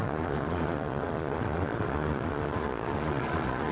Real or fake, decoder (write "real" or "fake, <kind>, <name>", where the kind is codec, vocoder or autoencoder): fake, vocoder, Vocos